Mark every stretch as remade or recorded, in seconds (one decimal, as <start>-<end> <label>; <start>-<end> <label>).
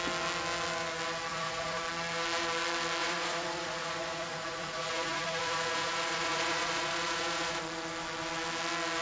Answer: 0.0-1.3 recorded; 1.3-1.8 remade; 1.8-3.0 recorded; 3.0-7.6 remade; 7.6-9.0 recorded